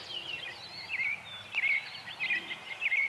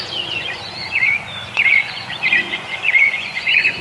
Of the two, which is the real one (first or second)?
first